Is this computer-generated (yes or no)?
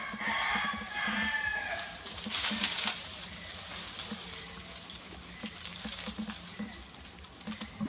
no